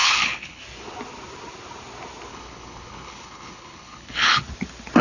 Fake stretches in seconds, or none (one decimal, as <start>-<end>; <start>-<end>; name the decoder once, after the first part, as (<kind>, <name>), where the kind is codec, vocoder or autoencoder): 0.0-0.6 (codec, HILCodec); 2.3-4.4